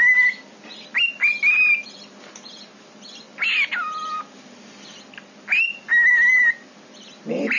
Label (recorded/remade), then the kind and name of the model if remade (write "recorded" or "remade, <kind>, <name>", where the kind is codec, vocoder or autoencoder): recorded